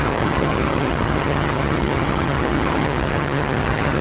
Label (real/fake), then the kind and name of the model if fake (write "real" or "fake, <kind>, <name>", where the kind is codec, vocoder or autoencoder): fake, vocoder, HiFi-GAN